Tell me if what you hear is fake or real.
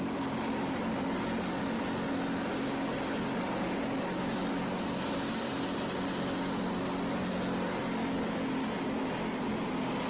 real